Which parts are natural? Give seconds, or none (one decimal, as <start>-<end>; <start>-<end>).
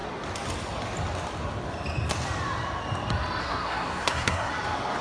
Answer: 0.0-3.4; 4.5-5.0